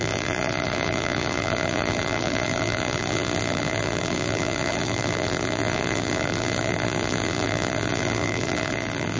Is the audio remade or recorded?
remade